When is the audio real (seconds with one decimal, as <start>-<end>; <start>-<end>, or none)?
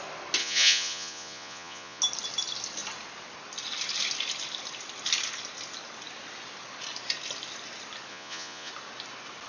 0.0-0.4; 2.0-8.1; 8.7-9.5